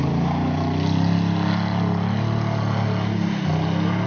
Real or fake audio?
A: real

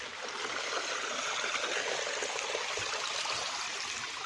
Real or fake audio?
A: real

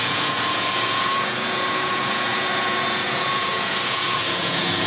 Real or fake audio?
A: fake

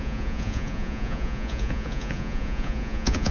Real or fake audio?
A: fake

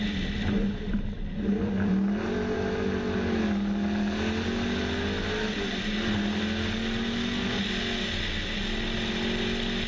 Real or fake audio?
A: real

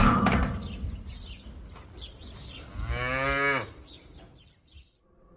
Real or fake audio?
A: real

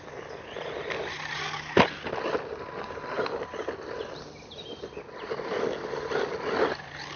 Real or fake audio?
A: real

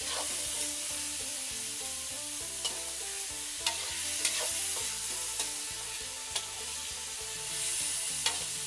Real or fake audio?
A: real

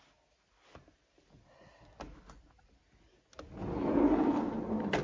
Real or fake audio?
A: real